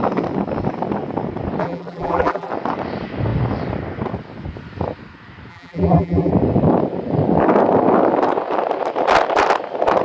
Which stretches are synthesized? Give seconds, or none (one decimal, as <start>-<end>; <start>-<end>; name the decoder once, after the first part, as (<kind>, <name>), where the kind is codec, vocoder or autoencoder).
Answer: 1.6-2.5 (vocoder, BigVGAN v2); 5.5-6.3